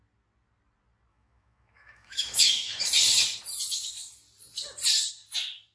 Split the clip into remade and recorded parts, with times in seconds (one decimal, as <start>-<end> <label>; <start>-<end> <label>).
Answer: 0.0-1.1 recorded; 1.1-2.9 remade; 2.9-5.7 recorded